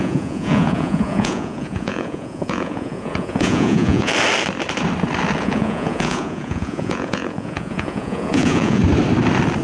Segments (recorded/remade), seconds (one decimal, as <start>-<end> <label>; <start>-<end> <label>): 0.0-4.1 remade; 4.1-5.4 recorded; 5.4-8.8 remade; 8.8-9.6 recorded